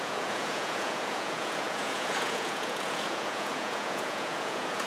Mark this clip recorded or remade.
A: remade